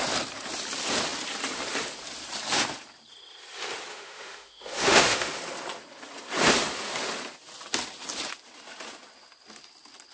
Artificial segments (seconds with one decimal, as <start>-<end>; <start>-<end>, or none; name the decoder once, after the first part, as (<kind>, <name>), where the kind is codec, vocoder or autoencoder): 3.9-5.4 (autoencoder, DAC-VAE)